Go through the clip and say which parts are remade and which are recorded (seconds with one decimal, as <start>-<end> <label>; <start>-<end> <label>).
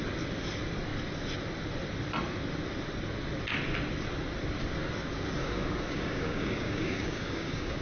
0.0-5.4 recorded; 5.4-7.8 remade